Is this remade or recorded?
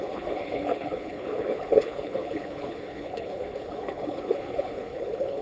remade